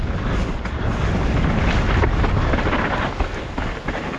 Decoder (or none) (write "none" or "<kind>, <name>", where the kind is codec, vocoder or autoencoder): none